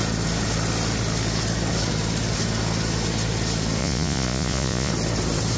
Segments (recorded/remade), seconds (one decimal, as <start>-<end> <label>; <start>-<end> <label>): 0.0-3.8 recorded; 3.8-4.9 remade; 4.9-5.6 recorded